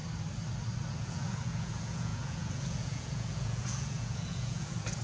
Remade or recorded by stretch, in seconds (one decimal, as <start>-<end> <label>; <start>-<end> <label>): 0.0-0.9 recorded; 0.9-5.0 remade